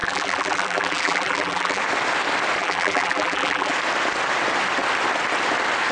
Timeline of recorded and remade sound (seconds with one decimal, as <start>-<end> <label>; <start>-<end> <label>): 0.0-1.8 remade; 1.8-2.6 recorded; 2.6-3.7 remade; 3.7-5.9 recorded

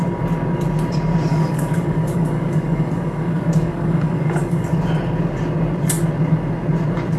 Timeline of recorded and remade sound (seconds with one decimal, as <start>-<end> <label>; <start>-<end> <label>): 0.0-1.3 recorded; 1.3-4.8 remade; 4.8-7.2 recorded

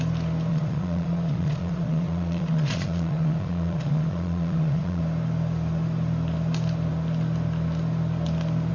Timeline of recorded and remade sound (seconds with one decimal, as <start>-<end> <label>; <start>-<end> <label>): 0.0-0.5 recorded; 0.5-5.0 remade; 5.0-8.7 recorded

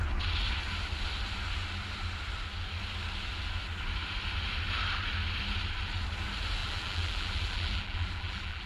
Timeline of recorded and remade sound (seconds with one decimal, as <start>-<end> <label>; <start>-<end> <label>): 0.0-6.6 recorded; 6.6-8.7 remade

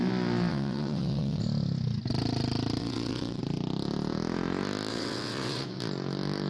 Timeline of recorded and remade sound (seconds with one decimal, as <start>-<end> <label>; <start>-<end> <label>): 0.0-0.5 recorded; 0.5-1.4 remade; 1.4-2.8 recorded; 2.8-3.4 remade; 3.4-4.9 recorded; 4.9-5.8 remade; 5.8-6.5 recorded

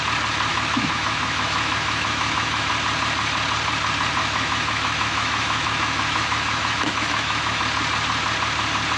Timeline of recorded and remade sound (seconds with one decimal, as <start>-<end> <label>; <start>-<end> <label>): 0.0-0.5 recorded; 0.5-2.7 remade; 2.7-4.2 recorded; 4.2-7.6 remade; 7.6-9.0 recorded